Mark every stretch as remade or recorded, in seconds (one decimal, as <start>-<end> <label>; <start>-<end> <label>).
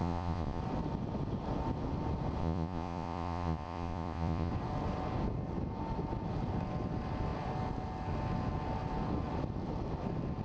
0.0-0.6 remade; 0.6-2.4 recorded; 2.4-4.5 remade; 4.5-10.4 recorded